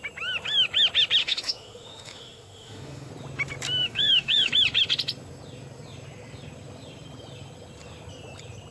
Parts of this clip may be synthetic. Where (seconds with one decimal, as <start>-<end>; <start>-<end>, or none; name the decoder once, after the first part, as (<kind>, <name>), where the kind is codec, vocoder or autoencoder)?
1.2-3.1 (autoencoder, DAC-VAE); 3.8-4.5